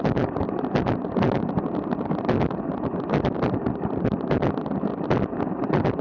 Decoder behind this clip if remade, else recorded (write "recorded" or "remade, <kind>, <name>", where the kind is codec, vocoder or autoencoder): remade, vocoder, BigVGAN v2